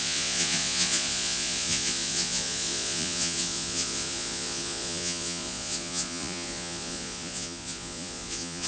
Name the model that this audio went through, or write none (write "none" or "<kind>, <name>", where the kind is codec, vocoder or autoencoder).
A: vocoder, Vocos